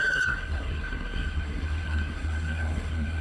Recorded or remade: remade